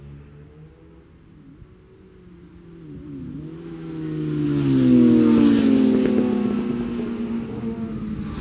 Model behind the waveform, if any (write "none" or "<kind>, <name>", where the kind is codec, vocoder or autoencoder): none